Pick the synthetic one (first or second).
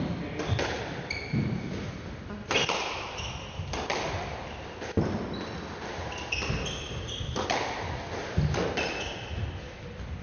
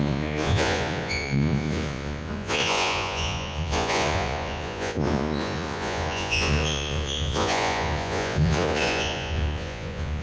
second